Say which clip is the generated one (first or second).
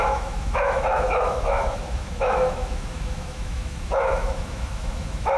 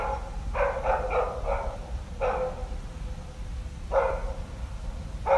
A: first